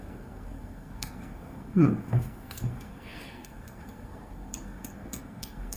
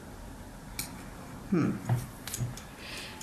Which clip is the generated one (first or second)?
first